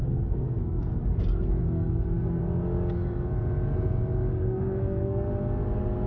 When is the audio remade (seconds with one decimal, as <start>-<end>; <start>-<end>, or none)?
0.0-1.0; 1.6-2.4; 4.3-5.3